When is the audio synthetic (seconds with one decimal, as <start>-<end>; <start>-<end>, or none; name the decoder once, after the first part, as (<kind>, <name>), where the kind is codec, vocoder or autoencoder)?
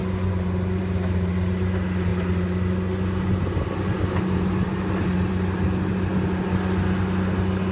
none